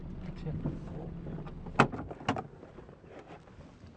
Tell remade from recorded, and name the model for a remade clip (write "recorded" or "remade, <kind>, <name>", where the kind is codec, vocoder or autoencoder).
recorded